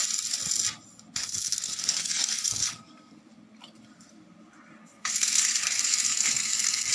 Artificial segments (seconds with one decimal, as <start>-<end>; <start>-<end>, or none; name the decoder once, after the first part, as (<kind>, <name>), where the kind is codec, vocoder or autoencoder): 1.2-3.2 (codec, SNAC); 4.8-6.9